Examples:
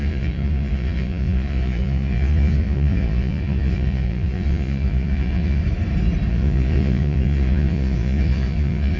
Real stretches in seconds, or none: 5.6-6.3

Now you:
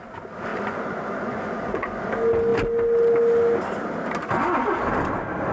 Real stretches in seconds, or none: 0.0-0.5; 2.1-5.5

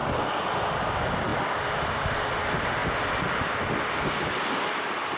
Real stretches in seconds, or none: 0.0-5.2

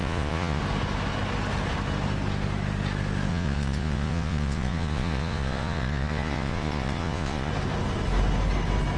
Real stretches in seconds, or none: 0.6-3.3; 7.5-9.0

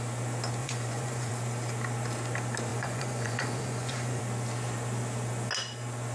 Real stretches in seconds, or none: 0.0-0.6; 1.3-2.7; 4.2-6.1

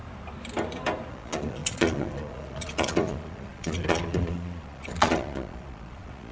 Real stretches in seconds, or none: 0.0-1.1